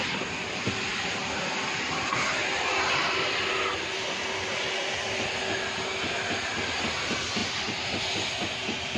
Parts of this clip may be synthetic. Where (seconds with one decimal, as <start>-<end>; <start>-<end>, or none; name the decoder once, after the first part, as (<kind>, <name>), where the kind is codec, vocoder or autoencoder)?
none